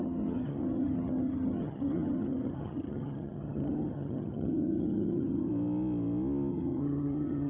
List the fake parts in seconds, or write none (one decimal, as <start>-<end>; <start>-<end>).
0.0-5.5; 6.5-7.5